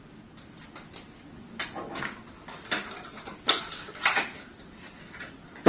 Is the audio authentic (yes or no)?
yes